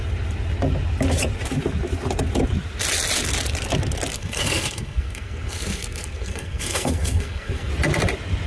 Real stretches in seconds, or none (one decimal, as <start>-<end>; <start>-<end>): 0.0-4.1; 7.7-8.5